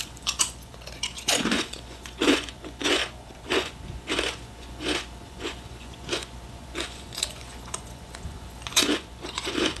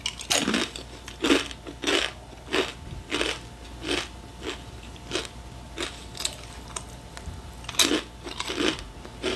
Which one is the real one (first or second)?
second